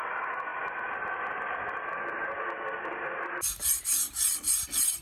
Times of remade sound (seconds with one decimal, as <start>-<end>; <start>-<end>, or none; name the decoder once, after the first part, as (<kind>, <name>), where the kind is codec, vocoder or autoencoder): none